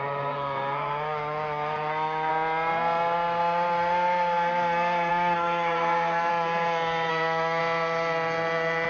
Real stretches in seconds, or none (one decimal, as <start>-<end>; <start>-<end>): 2.3-5.1; 6.3-7.1; 7.6-8.9